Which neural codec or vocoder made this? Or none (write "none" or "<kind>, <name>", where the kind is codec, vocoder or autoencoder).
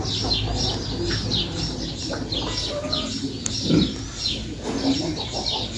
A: none